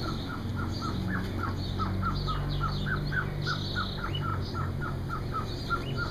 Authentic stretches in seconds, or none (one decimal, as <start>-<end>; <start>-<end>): 0.0-0.5; 1.3-6.1